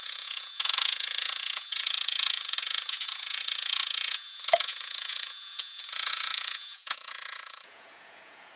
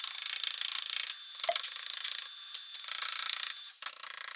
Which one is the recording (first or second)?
second